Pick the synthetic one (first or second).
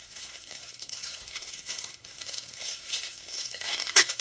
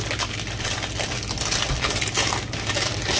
first